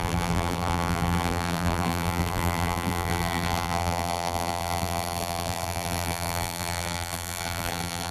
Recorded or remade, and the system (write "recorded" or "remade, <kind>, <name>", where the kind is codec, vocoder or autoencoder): remade, vocoder, BigVGAN v2